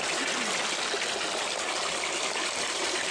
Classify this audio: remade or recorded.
recorded